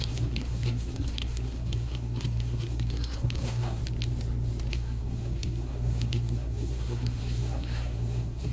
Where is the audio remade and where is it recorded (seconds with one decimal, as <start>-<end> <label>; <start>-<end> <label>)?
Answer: 0.0-3.8 remade; 3.8-4.7 recorded; 4.7-8.5 remade